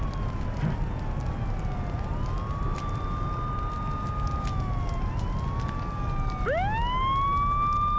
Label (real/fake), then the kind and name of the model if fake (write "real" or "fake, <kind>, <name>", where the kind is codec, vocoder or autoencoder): real